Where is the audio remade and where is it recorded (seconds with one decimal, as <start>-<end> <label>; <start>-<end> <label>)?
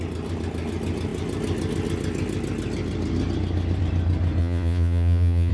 0.0-4.4 recorded; 4.4-5.5 remade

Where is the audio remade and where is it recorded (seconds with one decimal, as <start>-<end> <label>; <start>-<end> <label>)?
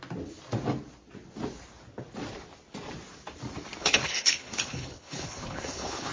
0.0-3.8 recorded; 3.8-6.1 remade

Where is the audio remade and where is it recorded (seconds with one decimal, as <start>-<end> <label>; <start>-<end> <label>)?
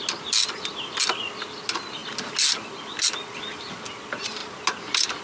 0.0-5.2 recorded